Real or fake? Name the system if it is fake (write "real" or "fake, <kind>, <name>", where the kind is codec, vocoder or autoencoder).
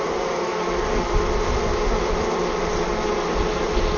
real